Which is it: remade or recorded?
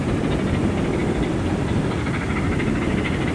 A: recorded